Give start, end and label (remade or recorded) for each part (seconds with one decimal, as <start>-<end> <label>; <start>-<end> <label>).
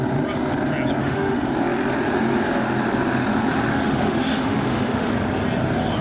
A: 0.0-1.0 recorded; 1.0-1.5 remade; 1.5-3.7 recorded; 3.7-5.1 remade; 5.1-6.0 recorded